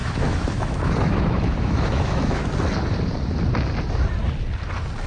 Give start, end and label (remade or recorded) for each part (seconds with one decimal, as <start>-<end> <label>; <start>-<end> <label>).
0.0-2.5 remade; 2.5-5.1 recorded

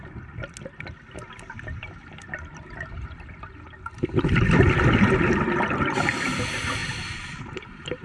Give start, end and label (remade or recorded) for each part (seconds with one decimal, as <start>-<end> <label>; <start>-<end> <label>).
0.0-8.0 recorded

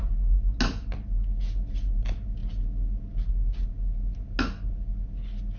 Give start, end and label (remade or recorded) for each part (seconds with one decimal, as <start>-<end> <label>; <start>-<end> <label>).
0.0-5.6 recorded

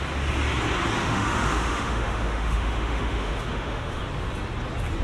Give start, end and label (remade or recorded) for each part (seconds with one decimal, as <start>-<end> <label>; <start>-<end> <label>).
0.0-1.0 recorded; 1.0-4.0 remade; 4.0-5.0 recorded

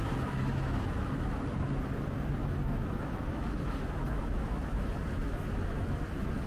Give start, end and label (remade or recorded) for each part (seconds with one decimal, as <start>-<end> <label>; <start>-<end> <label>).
0.0-1.4 remade; 1.4-2.4 recorded; 2.4-6.5 remade

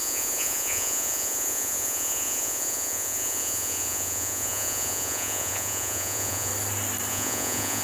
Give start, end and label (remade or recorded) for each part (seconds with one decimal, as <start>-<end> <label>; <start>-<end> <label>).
0.0-6.5 remade; 6.5-7.1 recorded; 7.1-7.8 remade

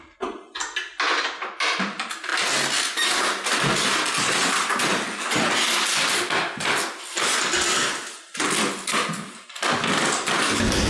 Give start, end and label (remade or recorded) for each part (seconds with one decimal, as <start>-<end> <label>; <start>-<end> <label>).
0.0-10.9 recorded